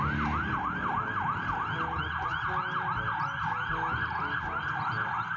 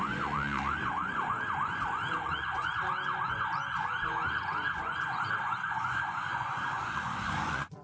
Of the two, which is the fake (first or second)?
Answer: second